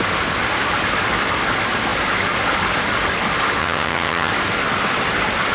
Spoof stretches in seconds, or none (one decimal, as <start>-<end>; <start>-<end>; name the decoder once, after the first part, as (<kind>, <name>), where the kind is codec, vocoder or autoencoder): 3.6-4.3 (vocoder, HiFi-GAN)